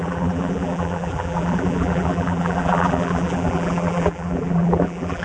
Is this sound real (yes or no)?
no